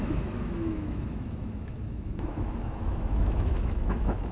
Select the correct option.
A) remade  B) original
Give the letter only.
A